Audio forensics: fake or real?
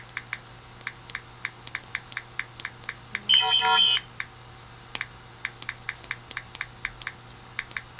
real